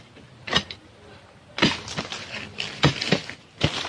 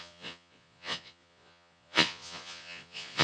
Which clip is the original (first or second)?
first